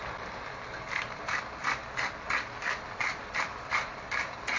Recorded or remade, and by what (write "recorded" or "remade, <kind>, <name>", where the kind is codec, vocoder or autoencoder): recorded